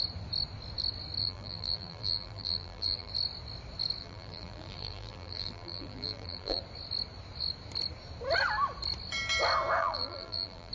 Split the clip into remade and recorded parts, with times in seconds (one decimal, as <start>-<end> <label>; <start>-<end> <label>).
0.0-1.2 recorded; 1.2-3.1 remade; 3.1-4.0 recorded; 4.0-6.6 remade; 6.6-9.8 recorded; 9.8-10.7 remade